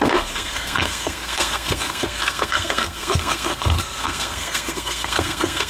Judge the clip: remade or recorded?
remade